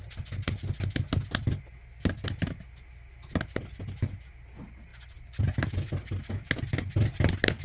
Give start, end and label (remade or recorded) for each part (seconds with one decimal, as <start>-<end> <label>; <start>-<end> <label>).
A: 0.0-7.6 recorded